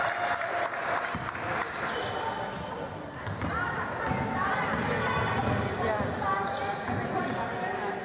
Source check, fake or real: real